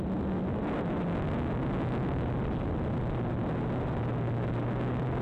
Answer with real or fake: real